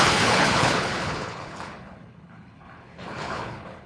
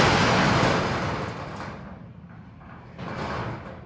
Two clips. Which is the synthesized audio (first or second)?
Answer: first